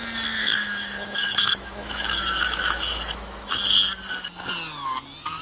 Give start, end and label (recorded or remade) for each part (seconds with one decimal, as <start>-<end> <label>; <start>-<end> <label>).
0.0-0.4 recorded; 0.4-3.6 remade; 3.6-5.4 recorded